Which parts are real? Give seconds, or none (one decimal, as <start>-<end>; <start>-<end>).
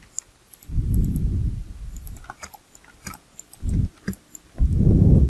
0.0-5.3